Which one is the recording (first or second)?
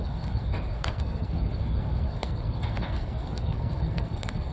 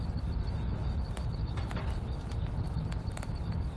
second